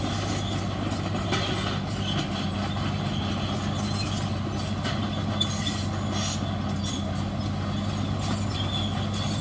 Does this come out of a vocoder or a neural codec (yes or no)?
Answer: no